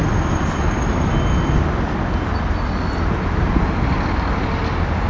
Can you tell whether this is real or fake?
real